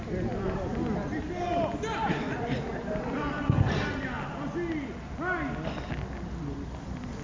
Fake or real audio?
real